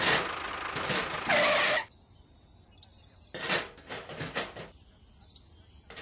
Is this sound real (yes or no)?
yes